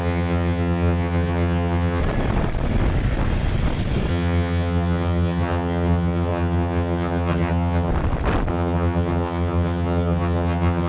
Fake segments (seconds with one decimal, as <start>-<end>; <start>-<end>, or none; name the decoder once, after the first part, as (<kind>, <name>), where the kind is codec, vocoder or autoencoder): 0.0-2.0 (vocoder, HiFi-GAN); 4.1-7.9; 8.5-10.9